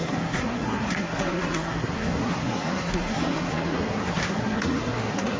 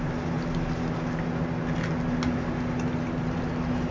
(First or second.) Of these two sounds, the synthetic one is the first